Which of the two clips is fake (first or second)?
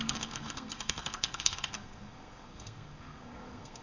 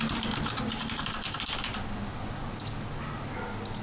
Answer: first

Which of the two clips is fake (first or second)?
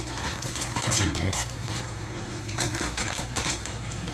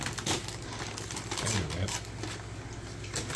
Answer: first